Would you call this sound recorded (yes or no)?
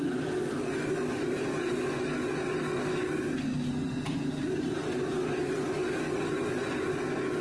yes